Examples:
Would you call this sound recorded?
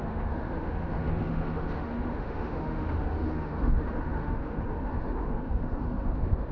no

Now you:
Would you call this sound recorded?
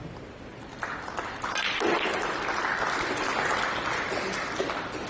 no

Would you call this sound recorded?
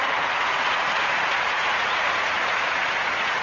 no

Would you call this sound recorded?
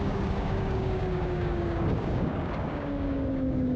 no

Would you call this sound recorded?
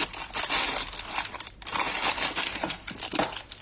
yes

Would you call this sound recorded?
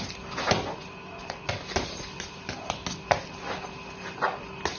yes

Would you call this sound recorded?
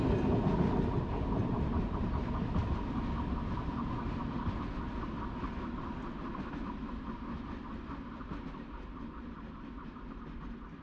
yes